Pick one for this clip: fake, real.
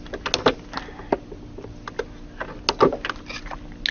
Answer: real